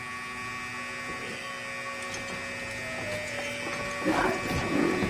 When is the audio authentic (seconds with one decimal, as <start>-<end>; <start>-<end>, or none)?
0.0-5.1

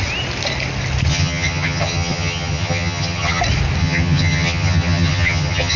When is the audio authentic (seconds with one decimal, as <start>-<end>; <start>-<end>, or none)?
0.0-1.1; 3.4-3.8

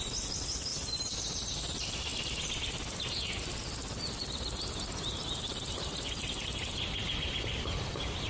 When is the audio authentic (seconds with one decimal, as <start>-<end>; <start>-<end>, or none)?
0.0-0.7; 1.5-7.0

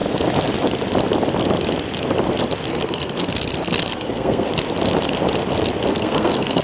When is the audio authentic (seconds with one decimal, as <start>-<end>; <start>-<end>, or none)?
0.0-2.7; 3.3-3.9; 4.5-5.9